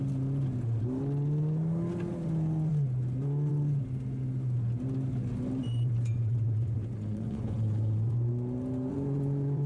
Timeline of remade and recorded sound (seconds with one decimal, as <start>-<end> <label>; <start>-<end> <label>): 0.0-5.6 recorded; 5.6-8.3 remade; 8.3-8.9 recorded; 8.9-9.7 remade